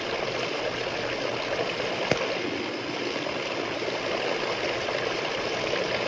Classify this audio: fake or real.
real